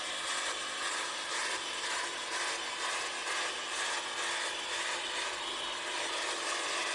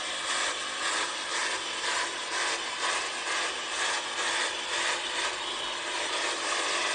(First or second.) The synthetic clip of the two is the second